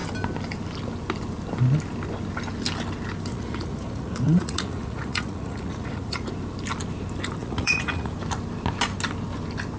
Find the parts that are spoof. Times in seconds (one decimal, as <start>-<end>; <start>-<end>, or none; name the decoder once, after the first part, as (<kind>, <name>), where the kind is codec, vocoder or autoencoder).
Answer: 3.3-6.3 (vocoder, Vocos); 7.4-8.1